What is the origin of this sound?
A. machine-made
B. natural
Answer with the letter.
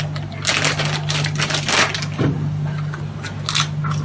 B